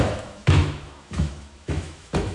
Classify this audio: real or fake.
fake